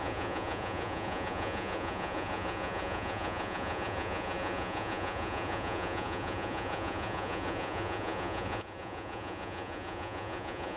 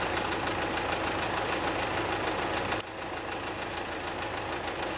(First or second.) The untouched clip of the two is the second